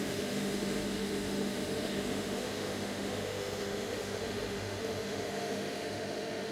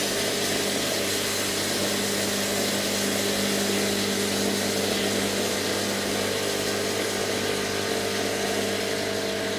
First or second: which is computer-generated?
first